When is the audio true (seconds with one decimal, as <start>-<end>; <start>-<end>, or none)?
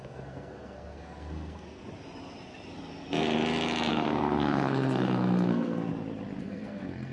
1.8-3.9; 5.9-6.4